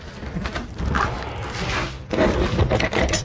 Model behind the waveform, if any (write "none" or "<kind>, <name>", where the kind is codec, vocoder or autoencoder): none